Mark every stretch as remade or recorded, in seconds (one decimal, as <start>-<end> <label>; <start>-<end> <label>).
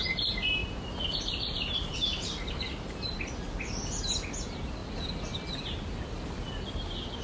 0.0-0.6 recorded; 0.6-3.3 remade; 3.3-7.2 recorded